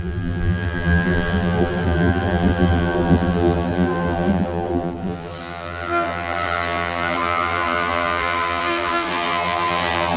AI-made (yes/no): yes